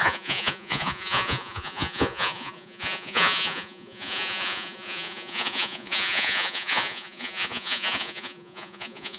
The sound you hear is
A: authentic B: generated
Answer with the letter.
B